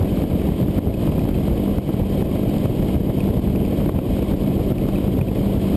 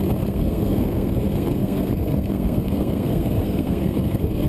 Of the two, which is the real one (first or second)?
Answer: first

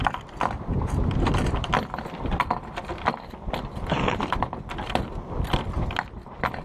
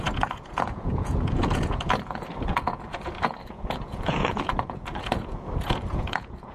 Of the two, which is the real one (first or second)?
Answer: first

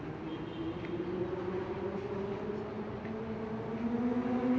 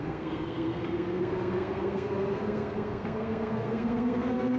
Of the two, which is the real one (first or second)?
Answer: first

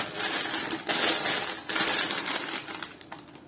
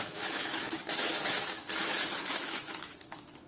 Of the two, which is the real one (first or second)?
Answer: first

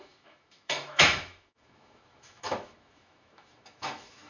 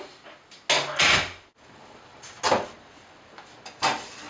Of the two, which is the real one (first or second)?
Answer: second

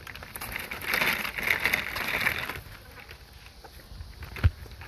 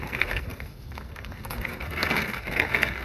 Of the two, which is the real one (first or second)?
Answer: first